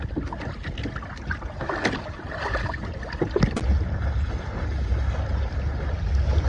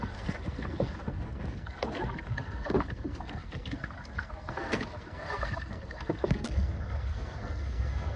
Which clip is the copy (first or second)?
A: second